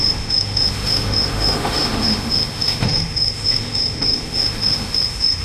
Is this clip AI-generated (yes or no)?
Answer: yes